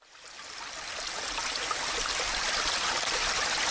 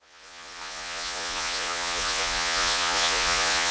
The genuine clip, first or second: first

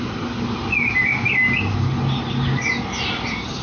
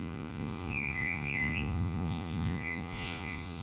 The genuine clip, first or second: first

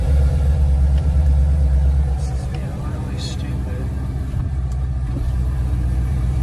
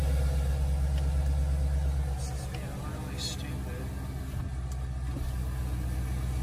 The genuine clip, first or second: second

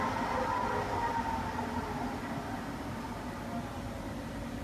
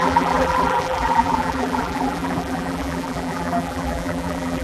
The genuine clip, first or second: first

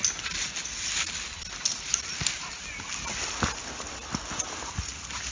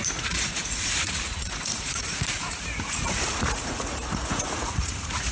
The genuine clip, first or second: first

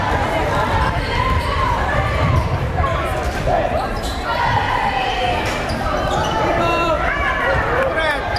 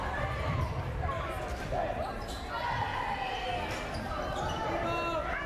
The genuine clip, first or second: second